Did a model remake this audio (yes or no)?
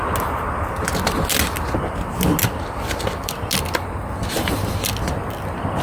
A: no